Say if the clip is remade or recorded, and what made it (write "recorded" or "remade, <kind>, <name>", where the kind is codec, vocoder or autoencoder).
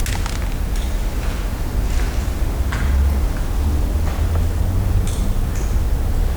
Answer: recorded